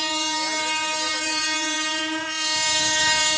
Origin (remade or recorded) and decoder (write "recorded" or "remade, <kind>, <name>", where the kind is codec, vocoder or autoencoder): remade, vocoder, Vocos